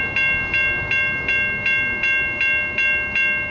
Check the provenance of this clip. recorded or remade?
recorded